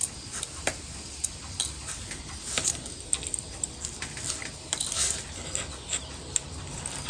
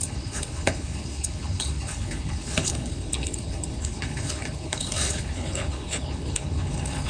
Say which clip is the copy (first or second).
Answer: second